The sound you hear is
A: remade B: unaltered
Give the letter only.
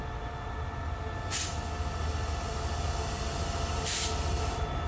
B